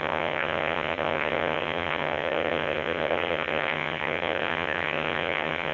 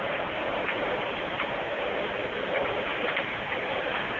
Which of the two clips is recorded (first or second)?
second